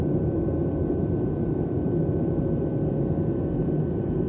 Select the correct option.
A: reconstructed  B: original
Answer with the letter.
B